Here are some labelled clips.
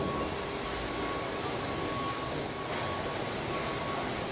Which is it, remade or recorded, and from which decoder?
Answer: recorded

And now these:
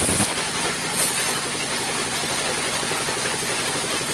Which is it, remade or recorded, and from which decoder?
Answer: remade, vocoder, Vocos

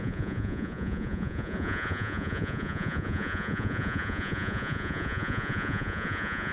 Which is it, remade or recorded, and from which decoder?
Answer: remade, vocoder, Vocos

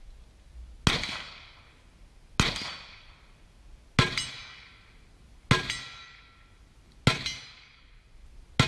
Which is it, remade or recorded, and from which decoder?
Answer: recorded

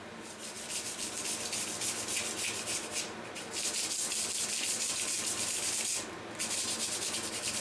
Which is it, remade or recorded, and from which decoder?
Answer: recorded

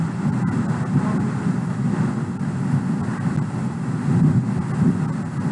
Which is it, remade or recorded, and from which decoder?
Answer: recorded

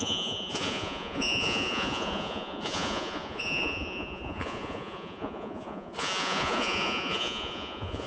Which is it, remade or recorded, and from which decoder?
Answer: remade, vocoder, Vocos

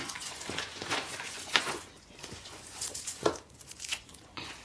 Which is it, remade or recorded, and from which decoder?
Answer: remade, vocoder, Vocos